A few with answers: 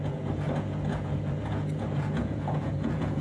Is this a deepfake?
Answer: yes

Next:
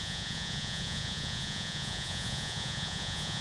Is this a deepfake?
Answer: yes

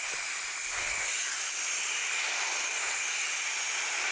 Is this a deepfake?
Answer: no